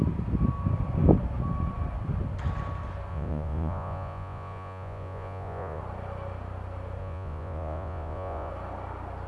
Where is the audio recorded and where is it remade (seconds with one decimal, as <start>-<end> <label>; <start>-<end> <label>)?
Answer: 0.0-3.1 recorded; 3.1-5.8 remade; 5.8-7.0 recorded; 7.0-8.5 remade; 8.5-9.3 recorded